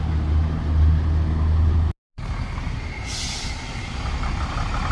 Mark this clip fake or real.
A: real